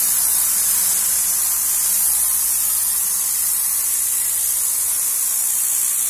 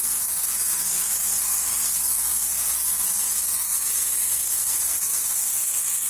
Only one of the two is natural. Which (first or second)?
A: first